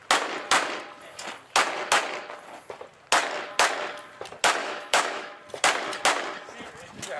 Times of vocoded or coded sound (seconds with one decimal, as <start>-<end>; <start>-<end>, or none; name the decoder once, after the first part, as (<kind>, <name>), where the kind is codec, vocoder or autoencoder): 4.6-5.4 (autoencoder, DAC-VAE)